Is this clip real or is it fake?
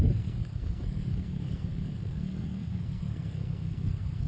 fake